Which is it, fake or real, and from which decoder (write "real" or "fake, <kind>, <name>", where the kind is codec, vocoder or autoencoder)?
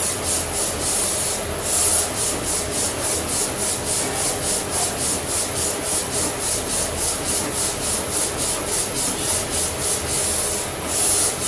real